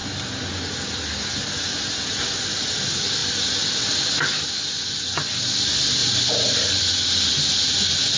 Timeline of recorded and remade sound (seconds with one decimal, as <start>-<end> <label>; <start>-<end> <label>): 0.0-6.0 recorded; 6.0-7.3 remade; 7.3-8.2 recorded